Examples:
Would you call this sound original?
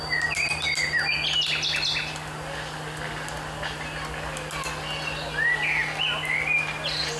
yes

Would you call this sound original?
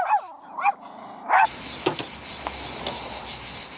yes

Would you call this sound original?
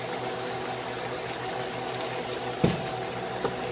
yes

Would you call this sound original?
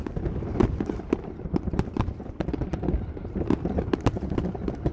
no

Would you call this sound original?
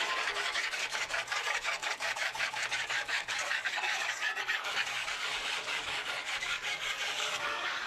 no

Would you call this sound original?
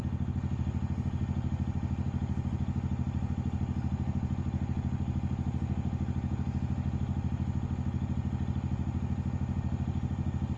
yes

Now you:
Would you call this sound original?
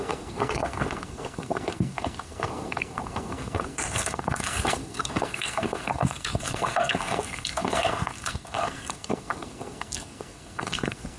no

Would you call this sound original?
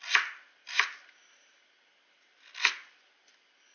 yes